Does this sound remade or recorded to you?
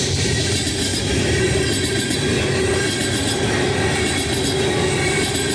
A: recorded